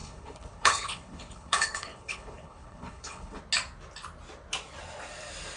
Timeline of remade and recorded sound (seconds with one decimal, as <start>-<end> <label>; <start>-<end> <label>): 0.0-3.4 remade; 3.4-5.6 recorded